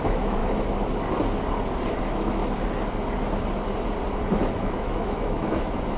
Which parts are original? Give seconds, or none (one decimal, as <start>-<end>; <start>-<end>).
0.4-2.0; 2.4-4.3